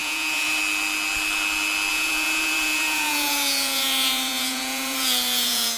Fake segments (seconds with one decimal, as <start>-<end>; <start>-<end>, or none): 0.0-0.6; 1.9-5.8